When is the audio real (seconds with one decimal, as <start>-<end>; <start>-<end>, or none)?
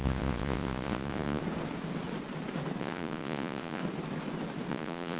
1.4-2.8; 3.8-4.7